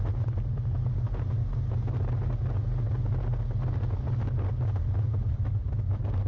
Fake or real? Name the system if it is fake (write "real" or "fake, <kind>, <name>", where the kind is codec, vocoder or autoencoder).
real